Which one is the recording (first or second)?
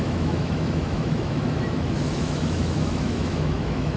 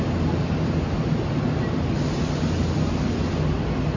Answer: second